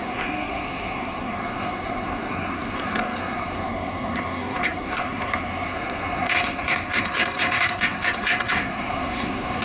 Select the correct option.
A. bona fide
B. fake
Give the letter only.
B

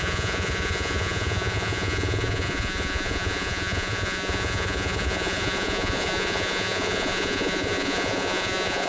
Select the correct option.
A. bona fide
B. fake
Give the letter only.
B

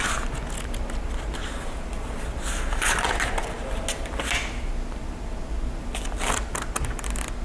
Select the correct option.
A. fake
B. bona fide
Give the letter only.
B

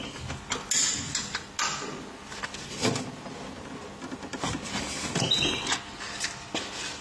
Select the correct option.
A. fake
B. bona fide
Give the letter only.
B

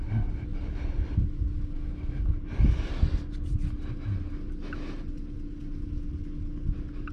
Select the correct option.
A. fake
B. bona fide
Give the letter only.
B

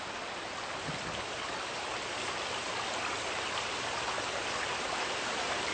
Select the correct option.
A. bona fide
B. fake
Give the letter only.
A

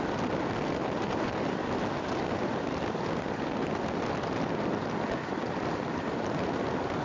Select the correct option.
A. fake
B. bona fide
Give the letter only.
B